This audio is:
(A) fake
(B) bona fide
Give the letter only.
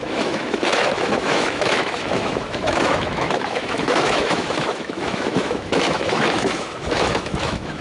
A